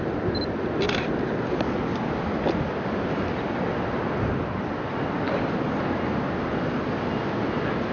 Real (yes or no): yes